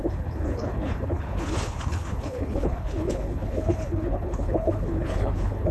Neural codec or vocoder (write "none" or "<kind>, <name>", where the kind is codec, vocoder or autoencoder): codec, HILCodec